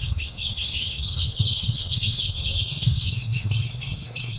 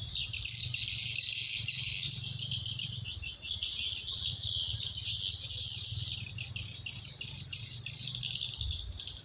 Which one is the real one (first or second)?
second